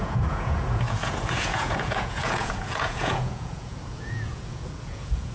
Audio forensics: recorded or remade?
remade